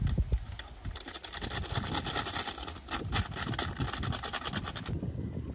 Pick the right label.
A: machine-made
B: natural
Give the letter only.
B